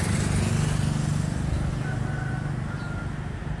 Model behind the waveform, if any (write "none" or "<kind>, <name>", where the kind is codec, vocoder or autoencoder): none